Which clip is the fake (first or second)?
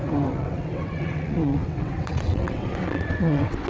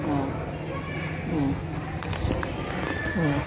first